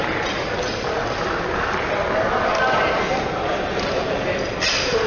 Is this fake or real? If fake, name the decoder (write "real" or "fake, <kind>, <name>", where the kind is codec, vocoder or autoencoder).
real